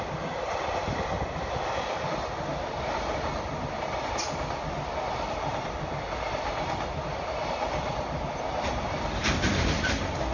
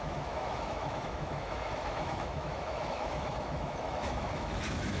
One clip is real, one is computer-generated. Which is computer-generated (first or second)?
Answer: second